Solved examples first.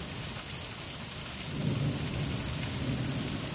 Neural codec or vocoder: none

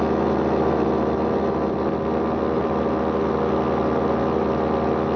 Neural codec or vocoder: none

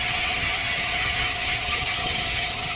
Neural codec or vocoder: vocoder, HiFi-GAN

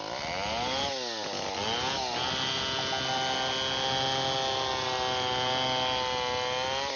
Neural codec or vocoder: none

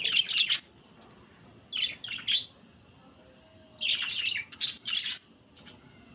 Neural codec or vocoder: none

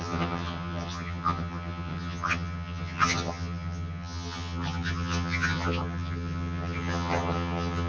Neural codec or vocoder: vocoder, HiFi-GAN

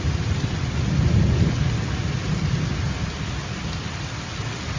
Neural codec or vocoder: none